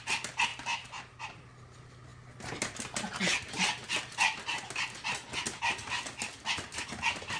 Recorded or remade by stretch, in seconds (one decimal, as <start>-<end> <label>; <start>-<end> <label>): 0.0-7.4 recorded

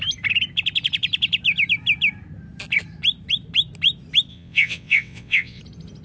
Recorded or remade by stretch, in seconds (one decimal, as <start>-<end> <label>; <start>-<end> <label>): 0.0-4.3 recorded; 4.3-5.6 remade; 5.6-6.0 recorded